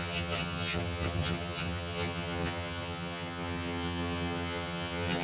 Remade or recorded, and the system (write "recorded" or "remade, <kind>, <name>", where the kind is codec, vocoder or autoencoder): remade, vocoder, HiFi-GAN